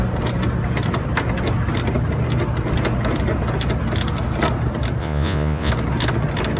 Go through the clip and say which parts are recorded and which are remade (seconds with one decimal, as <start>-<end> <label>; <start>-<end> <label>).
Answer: 0.0-5.0 recorded; 5.0-5.7 remade; 5.7-6.6 recorded